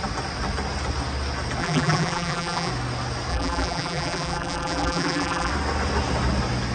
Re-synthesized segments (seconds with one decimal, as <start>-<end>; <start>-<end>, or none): 1.6-2.7; 3.3-5.5